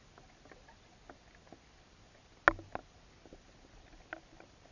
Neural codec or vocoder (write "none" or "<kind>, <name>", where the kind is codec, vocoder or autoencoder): none